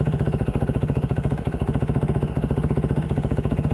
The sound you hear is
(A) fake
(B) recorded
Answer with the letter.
A